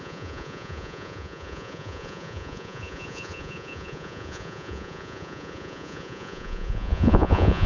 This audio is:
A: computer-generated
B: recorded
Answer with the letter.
A